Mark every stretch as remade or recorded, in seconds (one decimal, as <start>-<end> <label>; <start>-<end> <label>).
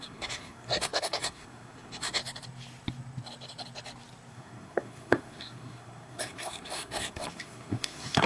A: 0.0-2.2 remade; 2.2-4.3 recorded; 4.3-8.3 remade